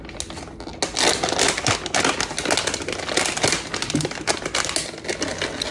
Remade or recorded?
recorded